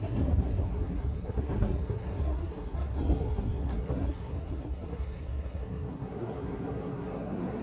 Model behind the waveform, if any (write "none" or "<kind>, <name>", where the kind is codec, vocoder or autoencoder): codec, SNAC